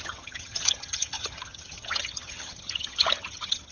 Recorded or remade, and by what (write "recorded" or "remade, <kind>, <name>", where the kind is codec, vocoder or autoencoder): remade, vocoder, HiFi-GAN